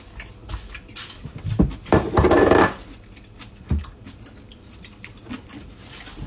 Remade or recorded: recorded